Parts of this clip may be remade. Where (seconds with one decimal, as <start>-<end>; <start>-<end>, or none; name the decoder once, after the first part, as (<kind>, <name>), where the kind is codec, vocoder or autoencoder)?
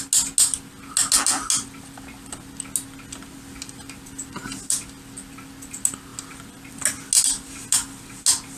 none